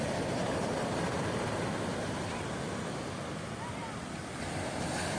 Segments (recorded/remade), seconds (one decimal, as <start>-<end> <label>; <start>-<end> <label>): 0.0-5.2 recorded